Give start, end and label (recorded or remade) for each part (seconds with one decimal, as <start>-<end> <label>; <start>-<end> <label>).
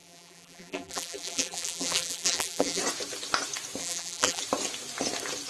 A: 0.0-2.8 remade; 2.8-3.8 recorded; 3.8-4.4 remade; 4.4-5.5 recorded